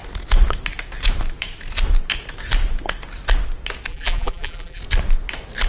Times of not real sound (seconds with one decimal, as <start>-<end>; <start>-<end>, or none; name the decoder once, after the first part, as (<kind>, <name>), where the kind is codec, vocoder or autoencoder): 3.9-4.8 (vocoder, BigVGAN v2)